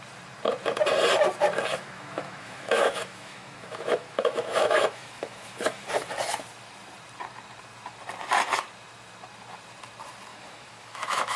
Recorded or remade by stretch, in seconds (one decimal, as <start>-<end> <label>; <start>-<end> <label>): 0.0-1.7 recorded; 1.7-5.8 remade; 5.8-10.3 recorded; 10.3-11.4 remade